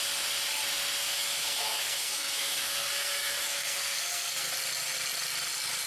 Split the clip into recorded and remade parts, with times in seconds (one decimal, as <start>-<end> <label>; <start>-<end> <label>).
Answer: 0.0-1.0 recorded; 1.0-4.5 remade; 4.5-5.9 recorded